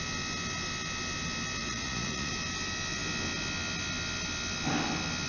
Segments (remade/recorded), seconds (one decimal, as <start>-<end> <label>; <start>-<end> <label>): 0.0-1.6 recorded; 1.6-2.3 remade; 2.3-5.3 recorded